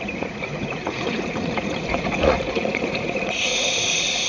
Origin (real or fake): fake